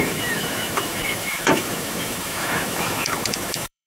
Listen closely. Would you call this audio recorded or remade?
remade